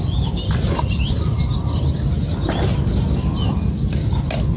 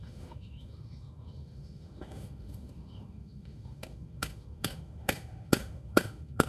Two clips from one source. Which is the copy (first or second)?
second